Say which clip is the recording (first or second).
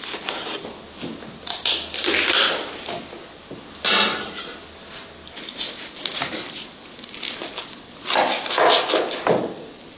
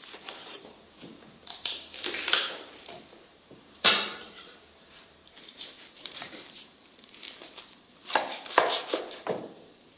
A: first